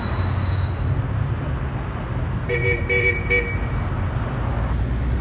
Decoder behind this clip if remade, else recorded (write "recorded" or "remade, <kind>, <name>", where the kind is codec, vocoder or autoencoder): recorded